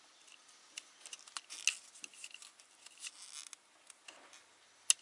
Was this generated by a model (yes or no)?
no